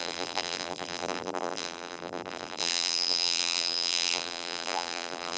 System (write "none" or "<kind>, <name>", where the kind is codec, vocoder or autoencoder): vocoder, BigVGAN v2